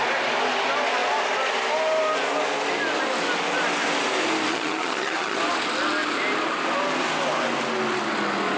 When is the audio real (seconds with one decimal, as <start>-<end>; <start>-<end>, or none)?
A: 0.0-4.5; 5.4-8.6